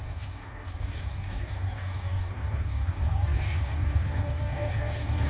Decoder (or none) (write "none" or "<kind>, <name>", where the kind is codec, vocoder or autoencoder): codec, DAC